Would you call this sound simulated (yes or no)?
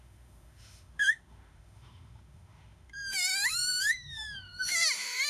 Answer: yes